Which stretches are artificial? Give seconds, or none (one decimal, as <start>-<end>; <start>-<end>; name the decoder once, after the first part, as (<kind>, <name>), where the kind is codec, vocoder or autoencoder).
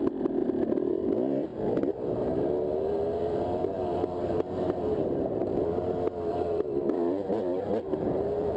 0.0-0.4 (vocoder, BigVGAN v2); 0.9-5.4; 6.3-8.6